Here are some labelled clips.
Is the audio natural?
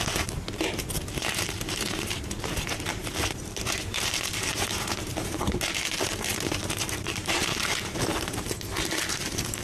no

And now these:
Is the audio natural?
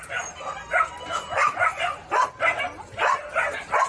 yes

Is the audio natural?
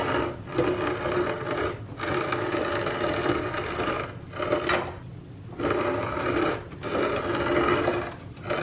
yes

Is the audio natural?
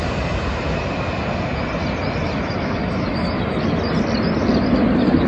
yes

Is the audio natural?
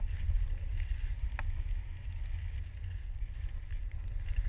yes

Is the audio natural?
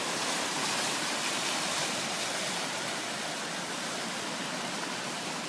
yes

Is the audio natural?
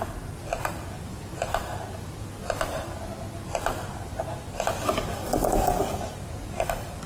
yes